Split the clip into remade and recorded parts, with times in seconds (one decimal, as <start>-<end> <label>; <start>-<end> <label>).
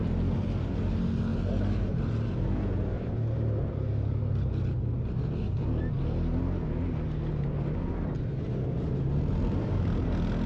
0.0-10.5 recorded